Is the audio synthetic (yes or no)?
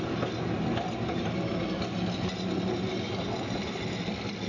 no